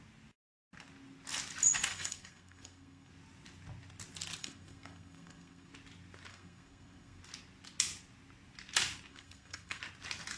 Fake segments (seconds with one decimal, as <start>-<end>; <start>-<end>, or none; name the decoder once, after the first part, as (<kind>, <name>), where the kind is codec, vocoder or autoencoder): 1.9-3.1 (codec, SNAC); 4.4-5.7; 6.3-7.2; 9.1-9.8